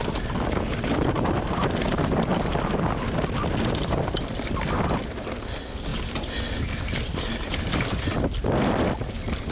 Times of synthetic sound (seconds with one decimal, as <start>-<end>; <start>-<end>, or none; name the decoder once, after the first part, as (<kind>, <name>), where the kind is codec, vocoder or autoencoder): none